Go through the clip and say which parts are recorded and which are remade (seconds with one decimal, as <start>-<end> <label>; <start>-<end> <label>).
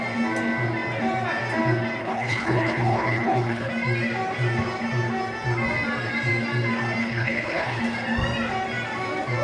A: 0.0-2.0 recorded; 2.0-3.7 remade; 3.7-7.0 recorded; 7.0-7.8 remade; 7.8-9.4 recorded